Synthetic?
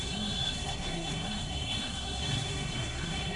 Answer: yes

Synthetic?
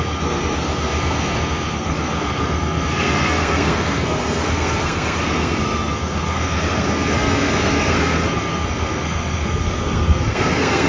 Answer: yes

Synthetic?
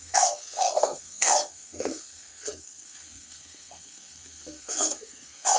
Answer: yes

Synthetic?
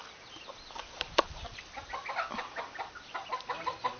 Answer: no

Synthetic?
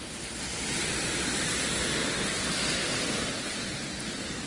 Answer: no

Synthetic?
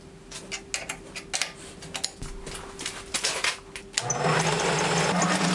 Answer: no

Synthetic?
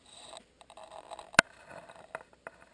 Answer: no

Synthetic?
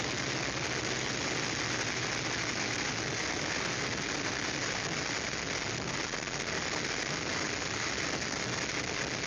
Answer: no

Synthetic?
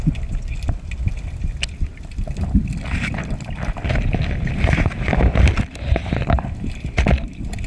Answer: no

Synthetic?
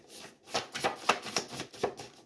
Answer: no